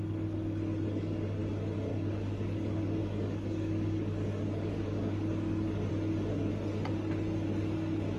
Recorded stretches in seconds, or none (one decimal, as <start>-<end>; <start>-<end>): 0.0-0.9; 1.4-1.9; 5.9-8.2